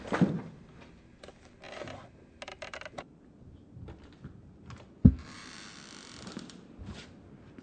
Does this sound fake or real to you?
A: real